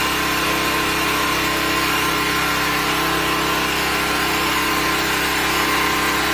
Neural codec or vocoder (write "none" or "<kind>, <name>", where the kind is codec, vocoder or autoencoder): none